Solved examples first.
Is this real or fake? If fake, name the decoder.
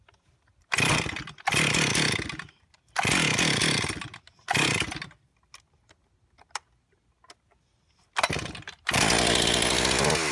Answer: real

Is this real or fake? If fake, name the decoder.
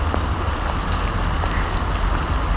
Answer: real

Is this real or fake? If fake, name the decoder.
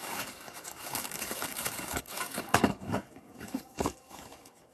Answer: fake, codec, DAC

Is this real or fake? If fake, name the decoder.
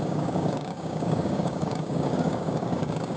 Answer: fake, codec, DAC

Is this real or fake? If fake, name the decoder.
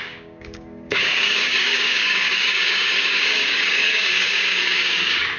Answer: fake, codec, DAC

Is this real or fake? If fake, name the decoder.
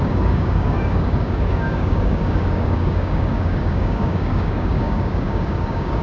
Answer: fake, codec, DAC